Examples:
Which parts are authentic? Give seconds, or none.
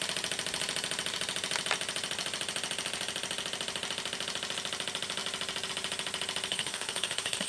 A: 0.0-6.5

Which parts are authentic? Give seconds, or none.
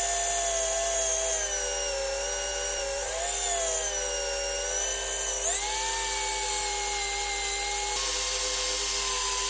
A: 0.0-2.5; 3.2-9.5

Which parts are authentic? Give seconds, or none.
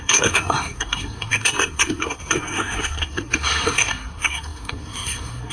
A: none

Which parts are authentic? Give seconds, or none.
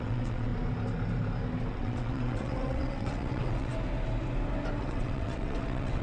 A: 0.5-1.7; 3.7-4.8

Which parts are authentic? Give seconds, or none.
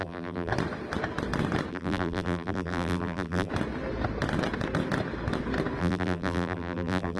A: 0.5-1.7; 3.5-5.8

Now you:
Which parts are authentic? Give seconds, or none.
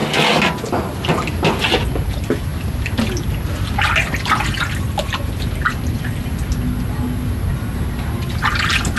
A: 0.0-9.0